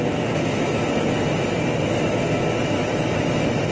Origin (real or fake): real